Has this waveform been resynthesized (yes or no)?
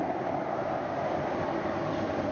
no